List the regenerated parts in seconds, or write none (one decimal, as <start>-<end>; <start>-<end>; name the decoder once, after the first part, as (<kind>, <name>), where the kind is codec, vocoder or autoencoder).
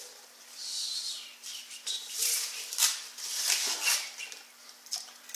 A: none